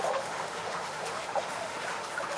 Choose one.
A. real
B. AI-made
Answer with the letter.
B